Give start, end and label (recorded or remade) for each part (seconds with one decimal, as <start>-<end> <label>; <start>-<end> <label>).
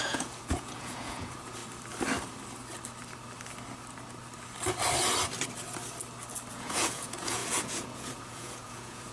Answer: 0.0-1.6 remade; 1.6-6.5 recorded; 6.5-9.1 remade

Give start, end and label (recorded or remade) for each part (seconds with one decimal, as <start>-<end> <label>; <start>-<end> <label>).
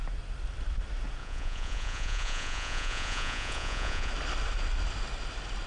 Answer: 0.0-1.2 recorded; 1.2-4.1 remade; 4.1-5.7 recorded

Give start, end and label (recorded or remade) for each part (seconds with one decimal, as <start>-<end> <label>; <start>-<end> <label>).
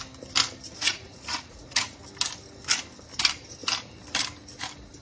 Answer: 0.0-0.8 recorded; 0.8-2.0 remade; 2.0-5.0 recorded